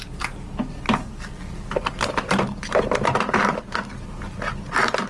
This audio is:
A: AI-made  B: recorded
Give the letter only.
B